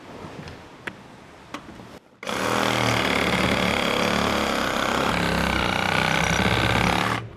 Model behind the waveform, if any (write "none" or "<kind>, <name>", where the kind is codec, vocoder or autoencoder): none